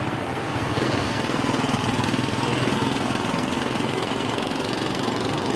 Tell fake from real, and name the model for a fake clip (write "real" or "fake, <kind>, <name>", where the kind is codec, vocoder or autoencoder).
fake, codec, SNAC